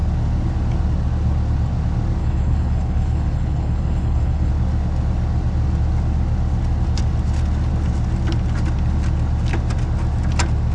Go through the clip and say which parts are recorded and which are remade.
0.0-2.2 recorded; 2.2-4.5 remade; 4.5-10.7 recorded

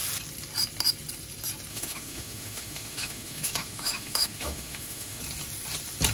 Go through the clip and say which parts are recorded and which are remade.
0.0-1.7 recorded; 1.7-5.2 remade; 5.2-6.1 recorded